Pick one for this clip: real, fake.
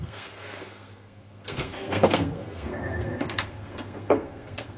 fake